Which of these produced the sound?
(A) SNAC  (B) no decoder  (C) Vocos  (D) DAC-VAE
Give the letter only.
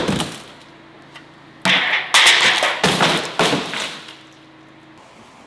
B